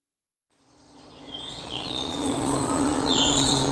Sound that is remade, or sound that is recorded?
remade